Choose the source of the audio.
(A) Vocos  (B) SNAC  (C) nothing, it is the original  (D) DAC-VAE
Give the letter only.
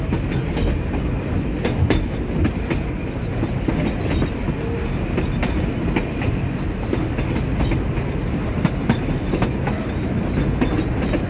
C